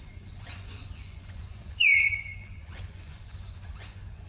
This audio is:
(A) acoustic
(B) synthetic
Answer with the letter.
B